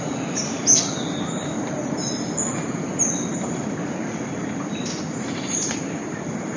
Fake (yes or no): no